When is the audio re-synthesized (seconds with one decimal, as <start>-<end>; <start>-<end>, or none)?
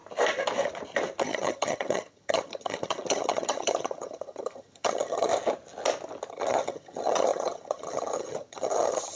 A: 1.2-5.3; 6.3-9.2